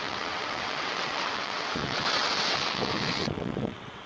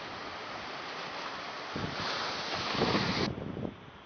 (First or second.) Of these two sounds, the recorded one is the second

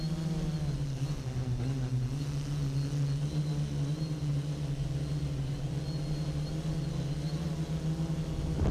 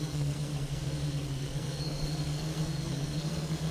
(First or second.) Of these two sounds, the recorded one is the first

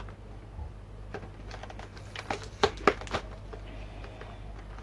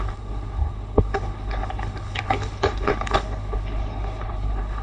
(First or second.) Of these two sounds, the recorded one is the first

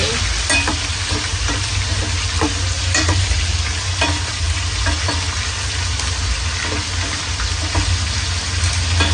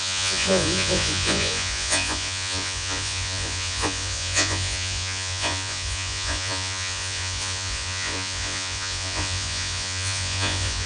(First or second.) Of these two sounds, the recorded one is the first